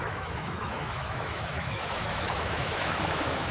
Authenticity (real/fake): fake